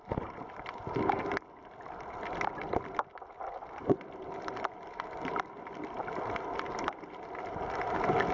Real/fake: real